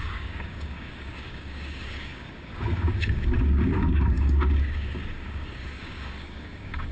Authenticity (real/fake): fake